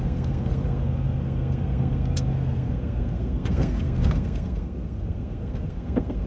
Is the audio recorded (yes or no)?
no